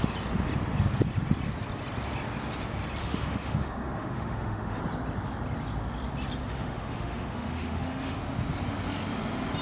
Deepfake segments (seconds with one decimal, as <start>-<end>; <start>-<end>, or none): 3.0-4.8; 6.4-8.2